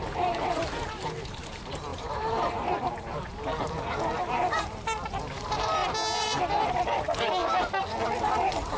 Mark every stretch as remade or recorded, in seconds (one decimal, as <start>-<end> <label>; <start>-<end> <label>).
0.0-5.8 remade; 5.8-6.7 recorded; 6.7-7.4 remade; 7.4-8.2 recorded; 8.2-8.8 remade